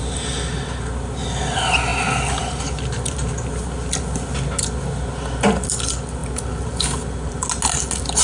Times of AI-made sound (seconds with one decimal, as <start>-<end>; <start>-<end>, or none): none